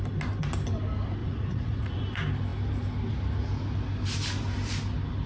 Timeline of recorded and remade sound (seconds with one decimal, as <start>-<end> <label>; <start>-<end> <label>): 0.0-1.2 recorded; 1.2-2.0 remade; 2.0-5.3 recorded